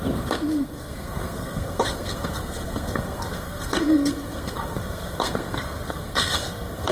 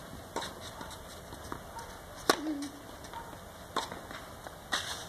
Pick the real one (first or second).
second